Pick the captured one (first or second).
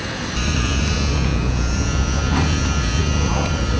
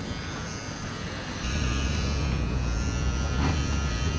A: second